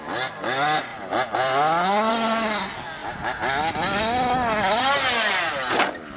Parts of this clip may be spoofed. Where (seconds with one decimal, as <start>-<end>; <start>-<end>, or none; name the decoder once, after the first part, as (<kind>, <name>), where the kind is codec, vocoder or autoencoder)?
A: 0.9-2.1 (vocoder, BigVGAN v2)